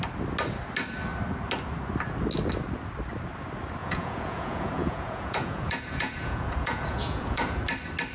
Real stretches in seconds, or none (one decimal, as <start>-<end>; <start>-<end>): 0.0-3.8; 7.6-8.1